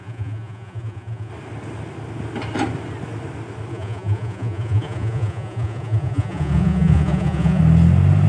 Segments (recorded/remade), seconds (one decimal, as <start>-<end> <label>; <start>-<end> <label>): 0.0-1.3 remade; 1.3-3.7 recorded; 3.7-7.6 remade; 7.6-8.3 recorded

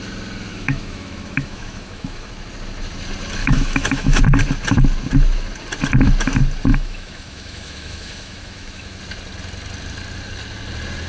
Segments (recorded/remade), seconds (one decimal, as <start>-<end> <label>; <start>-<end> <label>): 0.0-0.5 recorded; 0.5-2.3 remade; 2.3-3.4 recorded; 3.4-4.2 remade; 4.2-6.7 recorded; 6.7-9.0 remade; 9.0-11.1 recorded

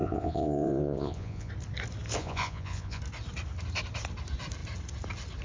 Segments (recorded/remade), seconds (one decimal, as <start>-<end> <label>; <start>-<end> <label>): 0.0-1.5 remade; 1.5-2.2 recorded; 2.2-3.0 remade; 3.0-5.4 recorded

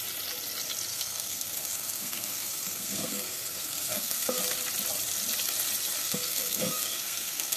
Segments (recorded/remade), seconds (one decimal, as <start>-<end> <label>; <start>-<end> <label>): 0.0-0.9 recorded; 0.9-4.4 remade; 4.4-6.0 recorded; 6.0-7.6 remade

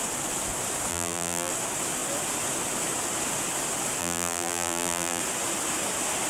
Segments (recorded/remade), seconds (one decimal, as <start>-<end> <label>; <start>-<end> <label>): 0.0-0.9 recorded; 0.9-1.5 remade; 1.5-4.0 recorded; 4.0-5.2 remade; 5.2-6.3 recorded